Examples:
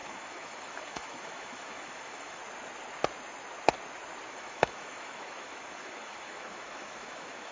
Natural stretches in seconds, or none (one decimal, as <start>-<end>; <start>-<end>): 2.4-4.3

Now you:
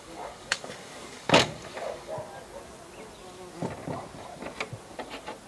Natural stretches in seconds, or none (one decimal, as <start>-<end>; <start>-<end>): 2.1-5.5

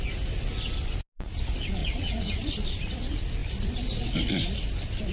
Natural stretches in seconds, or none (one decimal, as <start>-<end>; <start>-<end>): 0.0-1.8; 2.4-5.1